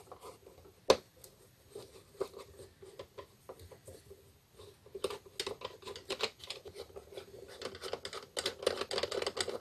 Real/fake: real